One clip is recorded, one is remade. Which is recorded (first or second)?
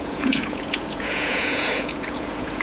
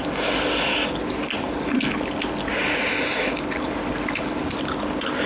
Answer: second